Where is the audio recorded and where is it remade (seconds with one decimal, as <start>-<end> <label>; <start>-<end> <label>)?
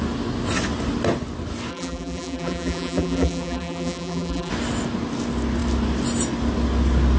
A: 0.0-1.7 recorded; 1.7-4.5 remade; 4.5-7.2 recorded